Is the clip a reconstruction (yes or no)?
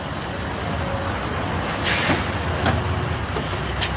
no